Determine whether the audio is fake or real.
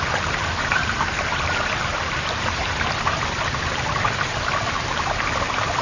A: real